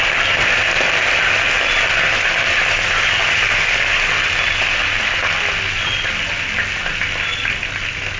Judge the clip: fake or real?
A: real